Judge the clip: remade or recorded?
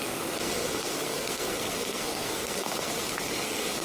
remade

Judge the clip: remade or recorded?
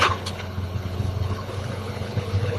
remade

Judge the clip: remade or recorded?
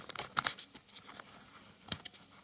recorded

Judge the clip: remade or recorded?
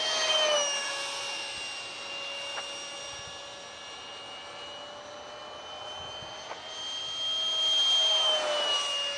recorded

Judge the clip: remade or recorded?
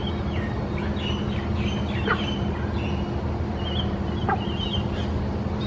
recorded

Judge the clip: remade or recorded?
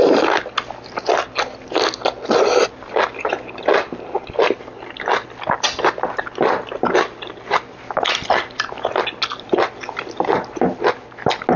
recorded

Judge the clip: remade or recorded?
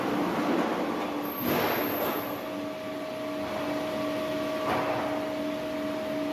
recorded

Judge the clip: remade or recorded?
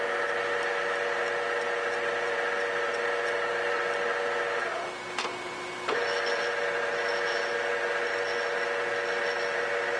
recorded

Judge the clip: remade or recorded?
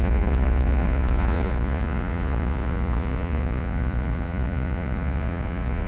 remade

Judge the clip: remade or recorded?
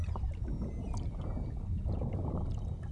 recorded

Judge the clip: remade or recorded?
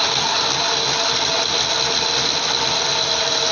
recorded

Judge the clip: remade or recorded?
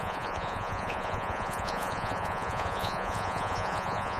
remade